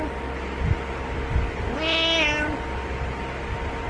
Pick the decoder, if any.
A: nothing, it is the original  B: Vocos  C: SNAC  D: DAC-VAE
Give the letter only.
A